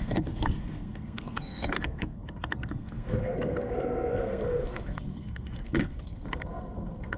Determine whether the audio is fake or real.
fake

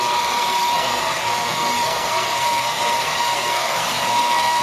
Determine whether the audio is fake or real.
fake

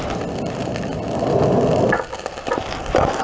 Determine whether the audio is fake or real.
real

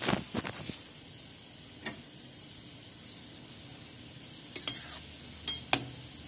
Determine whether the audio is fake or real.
real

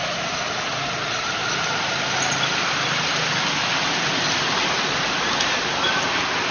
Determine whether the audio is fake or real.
real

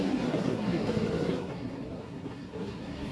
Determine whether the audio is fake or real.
fake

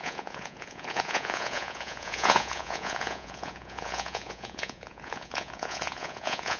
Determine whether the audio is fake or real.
fake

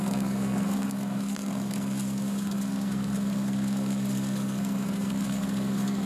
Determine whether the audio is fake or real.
fake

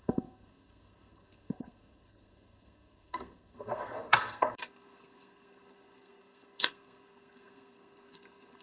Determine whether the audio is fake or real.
fake